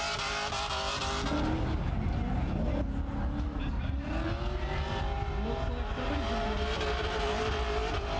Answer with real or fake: real